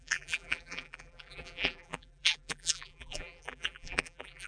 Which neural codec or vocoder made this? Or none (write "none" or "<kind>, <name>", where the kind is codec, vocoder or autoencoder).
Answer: vocoder, BigVGAN v2